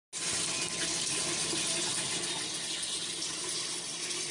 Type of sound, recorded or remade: recorded